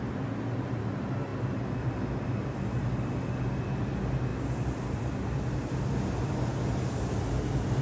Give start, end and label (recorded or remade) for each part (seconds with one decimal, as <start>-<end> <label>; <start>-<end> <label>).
0.0-7.8 recorded